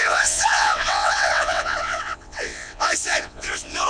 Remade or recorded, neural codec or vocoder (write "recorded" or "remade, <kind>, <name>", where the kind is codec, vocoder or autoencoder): remade, vocoder, WaveNeXt